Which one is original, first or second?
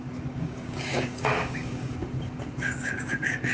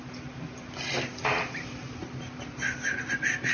second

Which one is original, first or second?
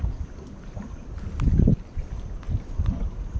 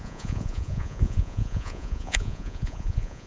first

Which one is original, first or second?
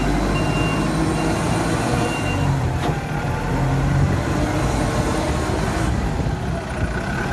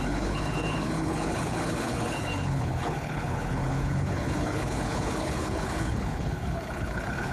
first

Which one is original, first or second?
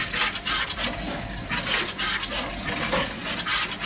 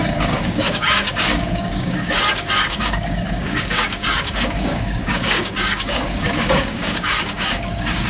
first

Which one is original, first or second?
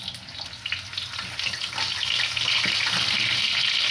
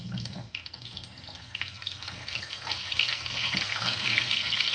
first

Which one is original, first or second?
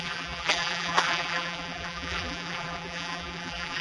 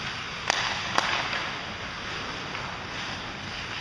second